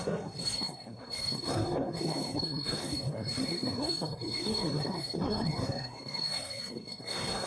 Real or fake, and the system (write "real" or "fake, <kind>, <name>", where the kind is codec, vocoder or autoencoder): fake, codec, SNAC